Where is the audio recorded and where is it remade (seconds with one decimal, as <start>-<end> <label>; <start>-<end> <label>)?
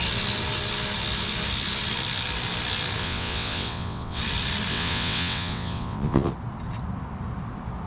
0.0-3.0 recorded; 3.0-4.2 remade; 4.2-4.7 recorded; 4.7-6.3 remade; 6.3-7.9 recorded